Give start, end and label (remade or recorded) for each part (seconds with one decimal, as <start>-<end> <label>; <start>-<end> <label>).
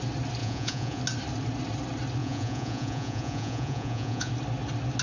0.0-0.4 recorded; 0.4-1.0 remade; 1.0-2.2 recorded; 2.2-4.3 remade; 4.3-5.0 recorded